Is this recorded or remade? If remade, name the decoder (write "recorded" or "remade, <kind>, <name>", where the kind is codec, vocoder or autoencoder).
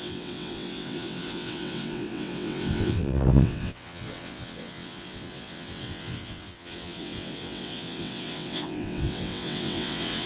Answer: remade, vocoder, WaveNeXt